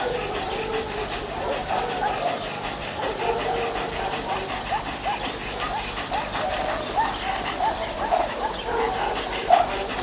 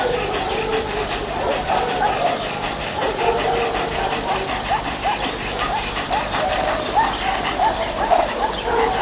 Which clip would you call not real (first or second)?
second